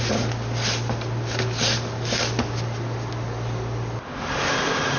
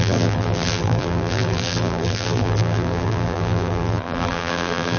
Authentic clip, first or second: first